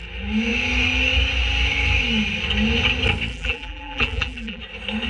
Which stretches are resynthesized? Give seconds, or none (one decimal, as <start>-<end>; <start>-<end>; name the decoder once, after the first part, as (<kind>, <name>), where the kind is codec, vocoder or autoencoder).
3.3-4.6 (vocoder, BigVGAN v2)